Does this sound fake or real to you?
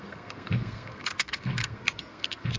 fake